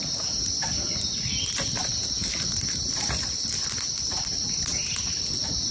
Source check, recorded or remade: recorded